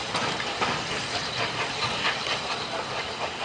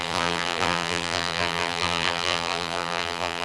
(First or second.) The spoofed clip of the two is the second